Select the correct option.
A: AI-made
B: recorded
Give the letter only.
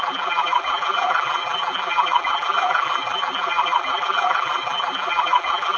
A